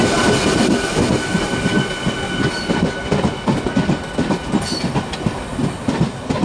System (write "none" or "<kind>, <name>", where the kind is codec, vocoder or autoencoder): none